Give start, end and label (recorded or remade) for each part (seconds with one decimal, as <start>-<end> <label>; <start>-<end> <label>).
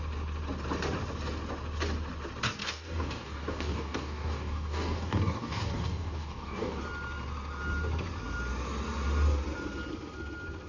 0.0-2.6 recorded; 2.6-6.8 remade; 6.8-10.7 recorded